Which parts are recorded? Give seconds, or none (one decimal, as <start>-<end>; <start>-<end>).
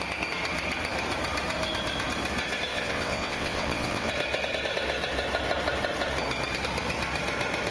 0.0-2.7; 4.1-7.7